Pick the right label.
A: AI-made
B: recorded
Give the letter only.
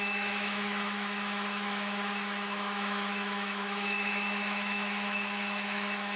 A